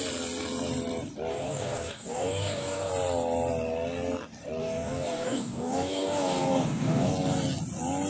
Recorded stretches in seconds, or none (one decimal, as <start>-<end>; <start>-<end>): 0.0-1.3; 2.9-4.6; 7.1-8.1